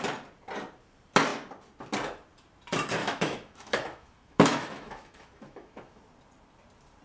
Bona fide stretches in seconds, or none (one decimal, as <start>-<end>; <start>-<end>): 0.0-3.0; 6.0-7.0